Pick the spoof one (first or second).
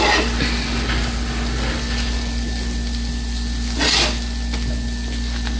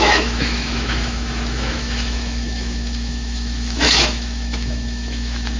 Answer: second